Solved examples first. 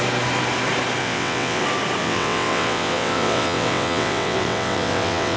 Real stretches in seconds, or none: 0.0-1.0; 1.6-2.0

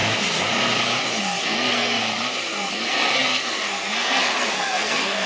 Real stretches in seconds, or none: 0.0-1.2; 2.0-2.7